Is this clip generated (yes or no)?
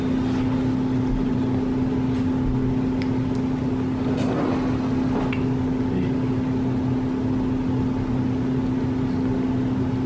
no